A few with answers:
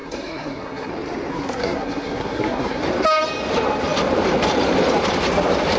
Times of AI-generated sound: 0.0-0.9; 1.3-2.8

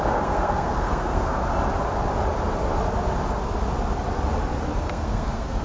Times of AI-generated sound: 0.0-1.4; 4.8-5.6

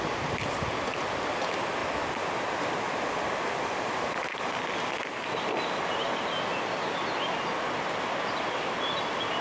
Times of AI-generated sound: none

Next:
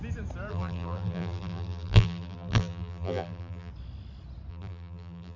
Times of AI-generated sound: 0.5-3.7; 4.5-5.4

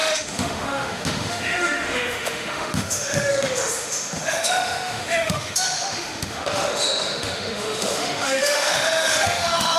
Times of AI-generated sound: 0.0-9.8